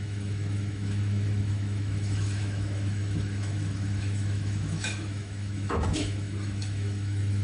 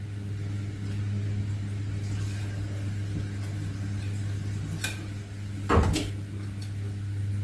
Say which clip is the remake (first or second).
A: first